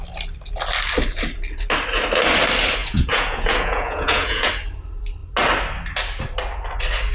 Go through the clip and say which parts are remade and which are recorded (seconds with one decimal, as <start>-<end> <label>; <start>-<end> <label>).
0.0-2.8 recorded; 2.8-4.5 remade; 4.5-7.1 recorded